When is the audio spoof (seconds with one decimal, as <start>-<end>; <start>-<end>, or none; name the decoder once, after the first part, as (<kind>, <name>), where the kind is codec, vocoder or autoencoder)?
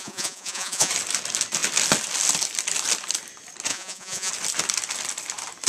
0.0-0.9 (vocoder, Vocos); 3.7-4.3